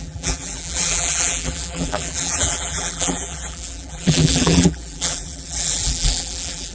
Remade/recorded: remade